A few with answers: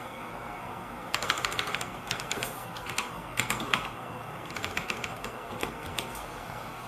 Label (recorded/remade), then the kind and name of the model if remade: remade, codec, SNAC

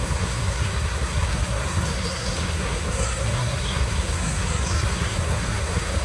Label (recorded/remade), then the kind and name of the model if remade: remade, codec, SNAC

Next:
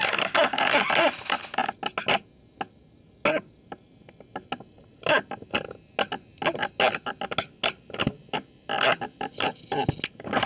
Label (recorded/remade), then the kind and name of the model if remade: recorded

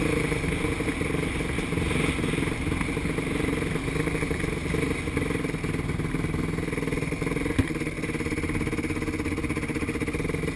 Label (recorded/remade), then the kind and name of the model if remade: recorded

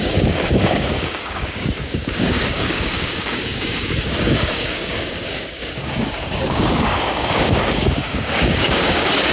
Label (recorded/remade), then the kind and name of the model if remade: remade, codec, DAC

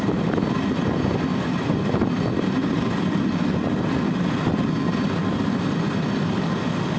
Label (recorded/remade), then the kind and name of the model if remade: recorded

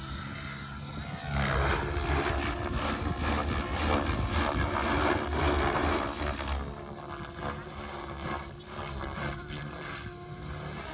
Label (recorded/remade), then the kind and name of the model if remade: recorded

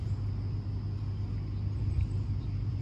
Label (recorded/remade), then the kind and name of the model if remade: recorded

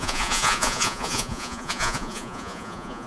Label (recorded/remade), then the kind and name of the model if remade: remade, vocoder, Vocos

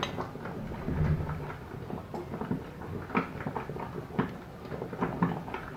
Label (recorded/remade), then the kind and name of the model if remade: recorded